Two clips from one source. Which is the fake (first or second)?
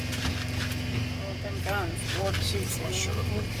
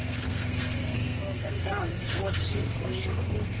second